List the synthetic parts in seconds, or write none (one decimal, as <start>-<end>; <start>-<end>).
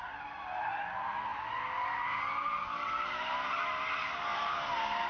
none